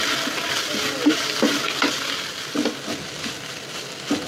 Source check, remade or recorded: recorded